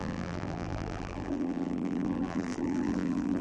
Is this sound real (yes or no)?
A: no